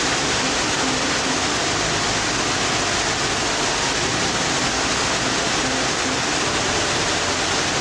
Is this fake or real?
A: real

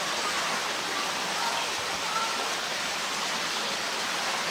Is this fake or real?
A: real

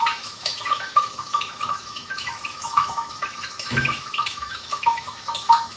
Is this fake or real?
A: fake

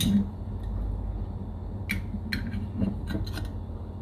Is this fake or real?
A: real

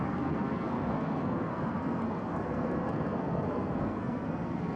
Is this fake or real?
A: fake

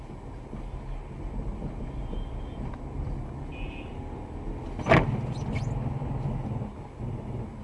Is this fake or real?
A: real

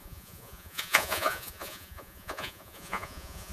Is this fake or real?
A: fake